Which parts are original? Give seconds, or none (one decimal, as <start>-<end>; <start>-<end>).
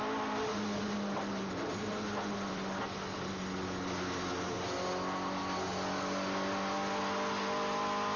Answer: 0.0-8.2